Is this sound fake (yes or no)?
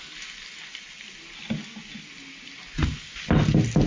no